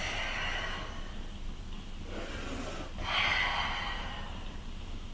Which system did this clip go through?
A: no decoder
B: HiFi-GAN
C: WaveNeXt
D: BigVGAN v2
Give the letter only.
A